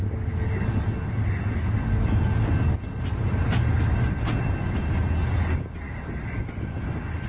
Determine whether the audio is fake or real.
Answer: real